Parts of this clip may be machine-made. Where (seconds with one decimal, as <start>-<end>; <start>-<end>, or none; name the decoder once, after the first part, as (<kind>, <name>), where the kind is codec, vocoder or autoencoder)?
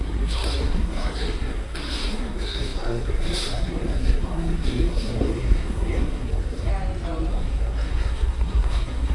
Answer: 0.0-6.7 (codec, SNAC); 7.3-9.1